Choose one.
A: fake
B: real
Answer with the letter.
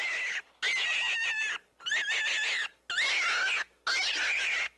B